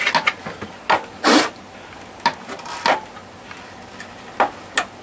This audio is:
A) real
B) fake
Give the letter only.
A